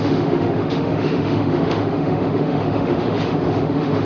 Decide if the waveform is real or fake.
fake